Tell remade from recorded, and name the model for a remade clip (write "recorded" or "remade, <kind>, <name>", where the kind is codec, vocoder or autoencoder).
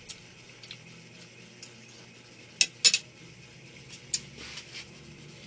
recorded